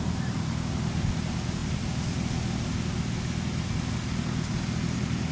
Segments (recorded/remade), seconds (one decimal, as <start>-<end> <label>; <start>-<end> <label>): 0.0-5.3 recorded